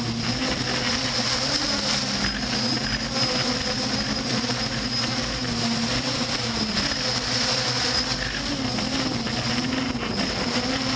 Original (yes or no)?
yes